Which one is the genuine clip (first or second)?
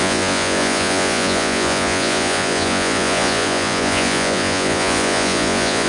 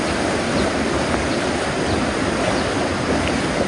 second